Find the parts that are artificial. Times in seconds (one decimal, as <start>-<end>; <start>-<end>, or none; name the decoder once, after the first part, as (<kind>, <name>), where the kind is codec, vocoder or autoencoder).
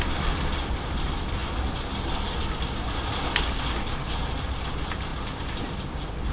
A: 0.0-1.4 (vocoder, BigVGAN v2); 4.5-5.1